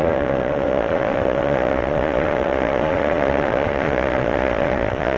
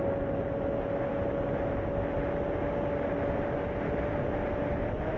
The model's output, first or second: first